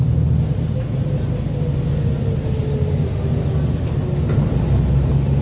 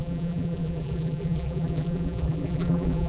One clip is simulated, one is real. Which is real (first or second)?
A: first